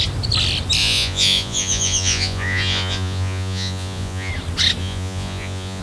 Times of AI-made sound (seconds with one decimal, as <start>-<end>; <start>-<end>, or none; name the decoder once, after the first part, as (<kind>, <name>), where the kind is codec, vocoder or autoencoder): 0.8-4.3 (vocoder, Vocos); 4.8-5.8